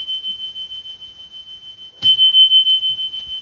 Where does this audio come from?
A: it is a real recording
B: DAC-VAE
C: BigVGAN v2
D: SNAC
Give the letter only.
A